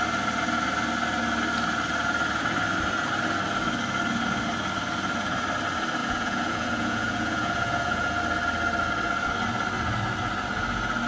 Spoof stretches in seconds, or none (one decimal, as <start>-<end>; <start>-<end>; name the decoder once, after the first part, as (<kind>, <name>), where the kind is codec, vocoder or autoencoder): 6.0-8.2 (vocoder, Vocos)